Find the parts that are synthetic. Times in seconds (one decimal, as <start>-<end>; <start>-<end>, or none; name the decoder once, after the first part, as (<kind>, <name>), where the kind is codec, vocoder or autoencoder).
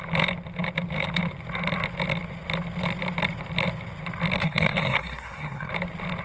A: 4.4-5.7 (codec, SNAC)